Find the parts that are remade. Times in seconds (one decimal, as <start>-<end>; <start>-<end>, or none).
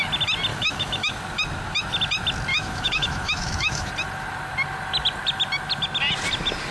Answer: 0.5-1.1; 2.5-3.9